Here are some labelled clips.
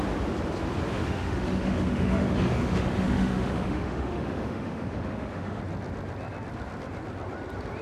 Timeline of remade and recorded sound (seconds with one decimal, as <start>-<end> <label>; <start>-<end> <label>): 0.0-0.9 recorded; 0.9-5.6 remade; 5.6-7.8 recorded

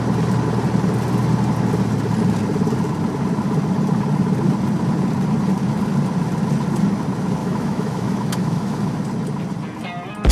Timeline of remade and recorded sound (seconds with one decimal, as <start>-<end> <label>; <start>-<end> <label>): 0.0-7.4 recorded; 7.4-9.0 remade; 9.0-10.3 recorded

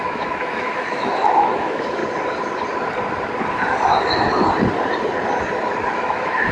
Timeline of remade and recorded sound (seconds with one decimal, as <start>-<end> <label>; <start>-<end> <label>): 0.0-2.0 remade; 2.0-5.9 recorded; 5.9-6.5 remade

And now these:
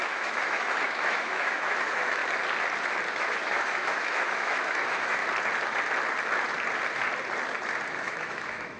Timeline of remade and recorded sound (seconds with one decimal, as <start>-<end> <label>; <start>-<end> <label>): 0.0-2.2 remade; 2.2-3.1 recorded; 3.1-5.2 remade; 5.2-7.9 recorded; 7.9-8.8 remade

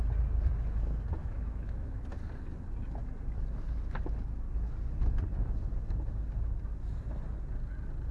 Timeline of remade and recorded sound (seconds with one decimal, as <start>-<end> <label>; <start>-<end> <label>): 0.0-1.2 recorded; 1.2-2.0 remade; 2.0-8.1 recorded

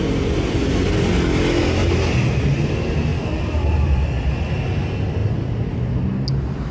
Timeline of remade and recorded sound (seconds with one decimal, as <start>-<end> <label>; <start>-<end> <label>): 0.0-6.7 recorded

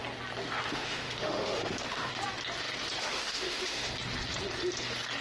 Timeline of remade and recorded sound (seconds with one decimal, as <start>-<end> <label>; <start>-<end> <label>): 0.0-0.7 recorded; 0.7-2.1 remade; 2.1-3.0 recorded; 3.0-3.9 remade; 3.9-5.2 recorded